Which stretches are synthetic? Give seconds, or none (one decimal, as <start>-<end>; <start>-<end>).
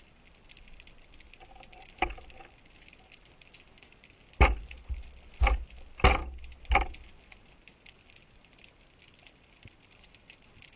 none